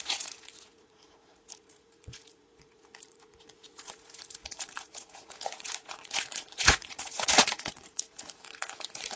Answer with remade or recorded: remade